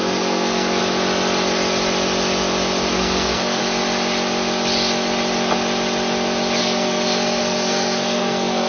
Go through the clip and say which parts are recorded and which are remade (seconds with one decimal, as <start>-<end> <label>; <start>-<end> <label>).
0.0-0.8 remade; 0.8-2.9 recorded; 2.9-3.6 remade; 3.6-6.6 recorded; 6.6-8.7 remade